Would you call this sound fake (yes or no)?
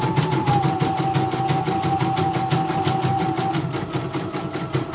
no